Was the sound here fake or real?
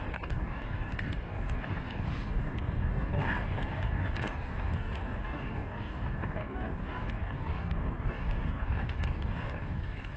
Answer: fake